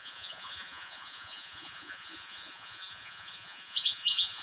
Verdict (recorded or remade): remade